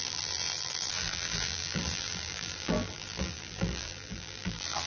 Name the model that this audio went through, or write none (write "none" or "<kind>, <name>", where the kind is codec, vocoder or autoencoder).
vocoder, BigVGAN v2